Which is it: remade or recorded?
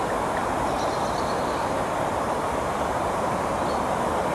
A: remade